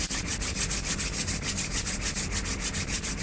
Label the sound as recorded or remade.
recorded